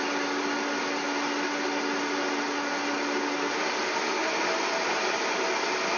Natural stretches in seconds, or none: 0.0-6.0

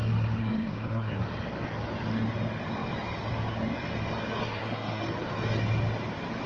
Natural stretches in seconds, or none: 0.0-0.4; 1.2-4.4; 5.0-6.5

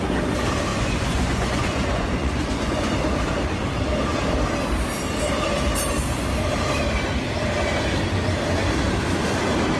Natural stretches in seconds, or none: 0.0-0.7; 2.9-9.8

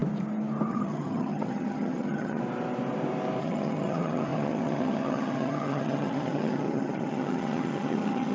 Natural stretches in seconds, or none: 0.0-0.7; 2.4-3.4